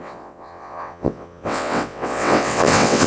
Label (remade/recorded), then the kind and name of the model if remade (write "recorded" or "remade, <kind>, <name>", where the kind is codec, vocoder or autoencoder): remade, vocoder, WaveNeXt